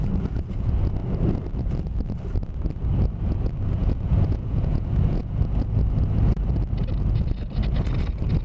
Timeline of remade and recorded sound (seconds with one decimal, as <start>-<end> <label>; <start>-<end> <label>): 0.0-3.8 recorded; 3.8-5.4 remade; 5.4-8.4 recorded